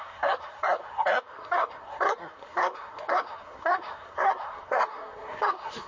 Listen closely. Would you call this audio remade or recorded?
remade